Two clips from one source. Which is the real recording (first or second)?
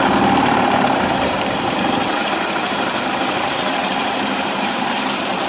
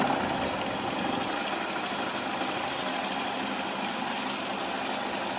second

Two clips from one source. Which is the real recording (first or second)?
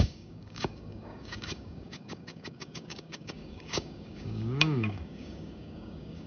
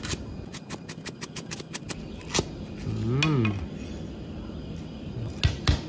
second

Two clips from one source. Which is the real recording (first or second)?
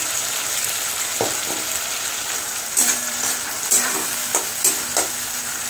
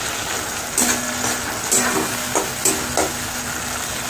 second